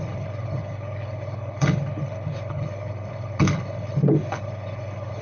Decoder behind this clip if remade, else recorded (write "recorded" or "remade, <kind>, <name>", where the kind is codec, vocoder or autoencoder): remade, codec, HILCodec